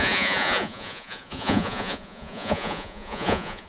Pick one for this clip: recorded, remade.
remade